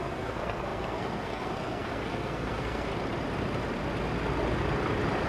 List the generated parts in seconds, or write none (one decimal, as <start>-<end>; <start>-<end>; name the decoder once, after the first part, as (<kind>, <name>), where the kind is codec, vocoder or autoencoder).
0.0-2.9 (codec, SNAC)

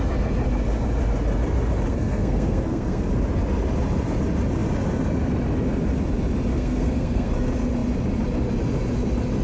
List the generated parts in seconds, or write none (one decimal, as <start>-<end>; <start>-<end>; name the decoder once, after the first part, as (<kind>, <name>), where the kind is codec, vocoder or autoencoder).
1.9-3.1 (codec, SNAC); 6.5-7.3

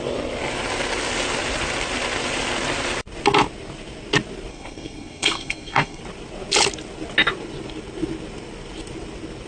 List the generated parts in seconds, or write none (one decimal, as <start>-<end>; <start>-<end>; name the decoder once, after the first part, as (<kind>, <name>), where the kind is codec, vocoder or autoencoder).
4.5-6.0 (codec, SNAC)

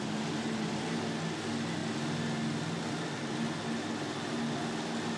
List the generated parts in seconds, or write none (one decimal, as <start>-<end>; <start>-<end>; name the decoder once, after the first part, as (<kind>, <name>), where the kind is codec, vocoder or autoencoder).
none

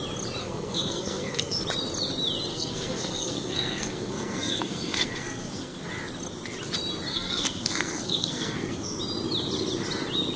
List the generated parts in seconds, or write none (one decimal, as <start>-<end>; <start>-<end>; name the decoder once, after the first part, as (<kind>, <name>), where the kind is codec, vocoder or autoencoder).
0.4-1.6 (codec, SNAC); 2.5-5.9; 7.1-9.0

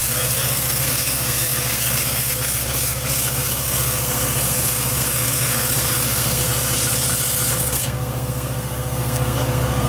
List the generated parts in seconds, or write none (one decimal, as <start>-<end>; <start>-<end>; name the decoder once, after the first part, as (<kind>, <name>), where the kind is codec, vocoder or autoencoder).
0.0-6.5 (codec, SNAC); 7.5-9.9

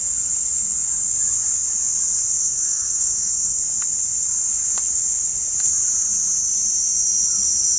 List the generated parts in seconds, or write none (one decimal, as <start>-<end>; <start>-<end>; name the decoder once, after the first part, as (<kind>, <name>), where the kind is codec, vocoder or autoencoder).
2.4-3.6 (codec, SNAC)

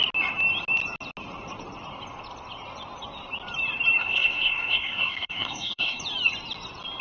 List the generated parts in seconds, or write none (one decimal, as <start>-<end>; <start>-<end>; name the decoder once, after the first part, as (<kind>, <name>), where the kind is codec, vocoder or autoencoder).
4.0-6.0 (codec, SNAC)